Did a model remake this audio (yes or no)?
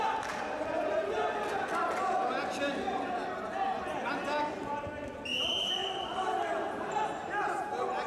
no